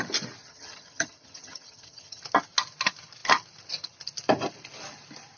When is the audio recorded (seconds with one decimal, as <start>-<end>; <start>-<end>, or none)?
0.0-0.4; 2.2-5.4